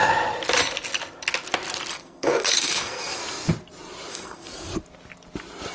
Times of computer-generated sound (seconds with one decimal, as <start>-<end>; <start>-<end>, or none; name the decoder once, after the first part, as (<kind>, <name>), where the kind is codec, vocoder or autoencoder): 1.9-3.2 (codec, SNAC); 4.1-4.7